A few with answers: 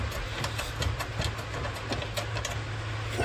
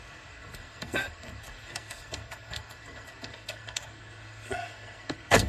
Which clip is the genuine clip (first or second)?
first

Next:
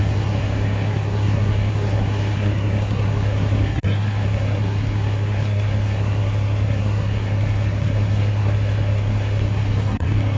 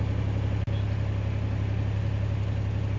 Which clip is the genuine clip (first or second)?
second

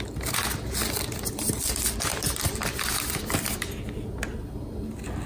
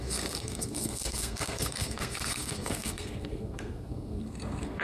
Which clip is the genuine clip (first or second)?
first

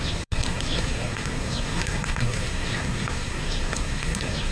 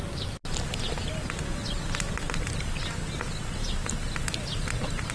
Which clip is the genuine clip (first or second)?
second